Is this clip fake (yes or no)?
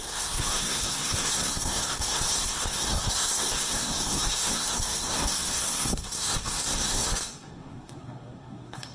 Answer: yes